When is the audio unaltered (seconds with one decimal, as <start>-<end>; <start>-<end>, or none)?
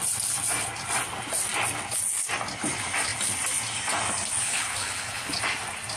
0.0-4.4; 5.4-6.0